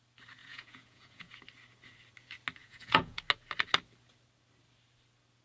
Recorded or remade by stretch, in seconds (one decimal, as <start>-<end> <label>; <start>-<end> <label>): 0.0-0.4 recorded; 0.4-1.3 remade; 1.3-2.6 recorded; 2.6-3.2 remade; 3.2-5.4 recorded